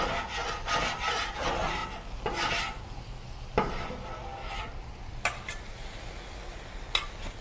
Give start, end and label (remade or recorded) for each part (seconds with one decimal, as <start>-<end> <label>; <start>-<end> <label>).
0.0-7.4 recorded